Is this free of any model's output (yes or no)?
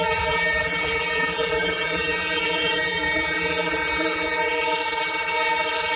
no